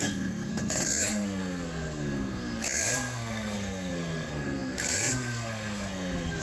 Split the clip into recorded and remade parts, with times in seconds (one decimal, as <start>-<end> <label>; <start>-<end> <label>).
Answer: 0.0-6.4 remade